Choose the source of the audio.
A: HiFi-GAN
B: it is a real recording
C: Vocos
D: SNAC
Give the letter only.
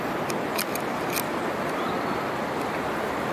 B